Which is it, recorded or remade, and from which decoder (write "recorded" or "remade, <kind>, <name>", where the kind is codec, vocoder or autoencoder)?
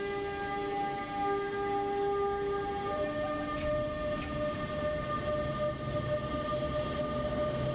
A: recorded